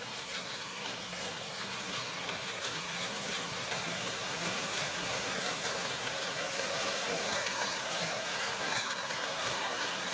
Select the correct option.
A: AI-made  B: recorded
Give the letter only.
A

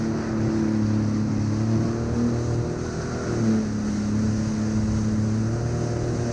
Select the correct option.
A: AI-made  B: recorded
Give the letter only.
B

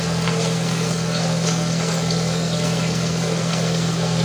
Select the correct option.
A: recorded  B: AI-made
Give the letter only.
B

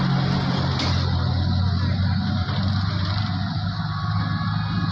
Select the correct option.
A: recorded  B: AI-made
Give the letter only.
A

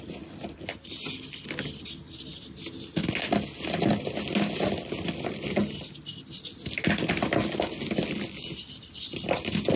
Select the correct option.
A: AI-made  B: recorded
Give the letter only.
B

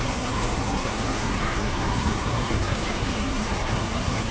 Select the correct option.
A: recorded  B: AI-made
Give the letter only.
B